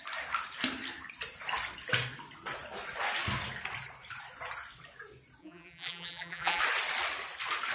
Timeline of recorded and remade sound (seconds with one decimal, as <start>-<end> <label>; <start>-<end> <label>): 0.0-5.4 recorded; 5.4-6.6 remade; 6.6-7.7 recorded